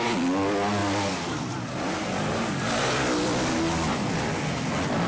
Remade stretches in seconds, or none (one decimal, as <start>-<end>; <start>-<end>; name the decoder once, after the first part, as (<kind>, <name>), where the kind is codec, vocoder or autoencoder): none